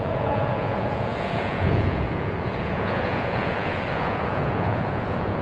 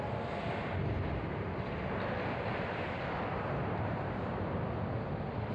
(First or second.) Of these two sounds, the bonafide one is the second